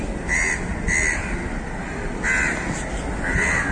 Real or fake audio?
real